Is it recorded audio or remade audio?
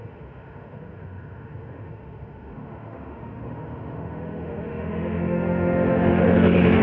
remade